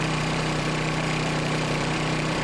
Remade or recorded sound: remade